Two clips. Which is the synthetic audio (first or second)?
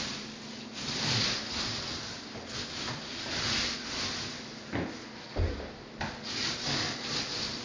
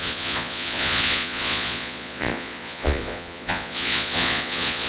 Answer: second